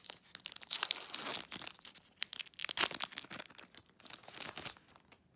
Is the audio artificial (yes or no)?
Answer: no